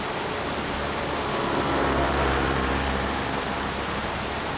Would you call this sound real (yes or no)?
no